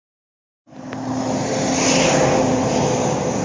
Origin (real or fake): real